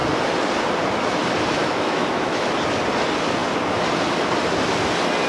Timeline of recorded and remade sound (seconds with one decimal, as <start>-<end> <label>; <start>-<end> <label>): 0.0-1.6 recorded; 1.6-2.5 remade; 2.5-5.3 recorded